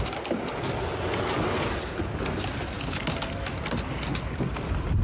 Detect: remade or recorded recorded